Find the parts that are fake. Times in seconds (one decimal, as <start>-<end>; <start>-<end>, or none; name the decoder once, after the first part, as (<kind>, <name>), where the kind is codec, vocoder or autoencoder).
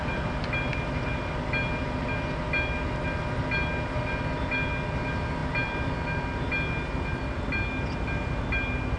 none